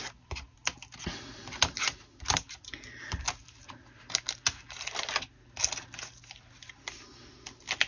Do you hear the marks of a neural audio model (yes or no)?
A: no